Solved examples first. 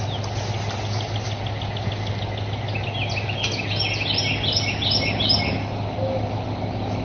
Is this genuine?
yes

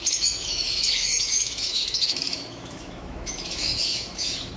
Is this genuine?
no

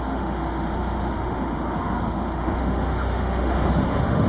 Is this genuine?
no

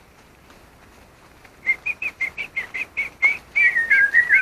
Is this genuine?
yes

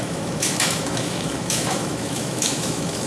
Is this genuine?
no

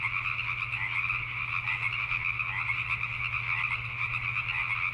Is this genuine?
yes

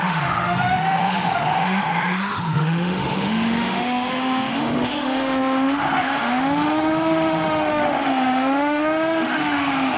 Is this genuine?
no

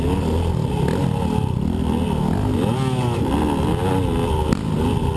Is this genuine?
yes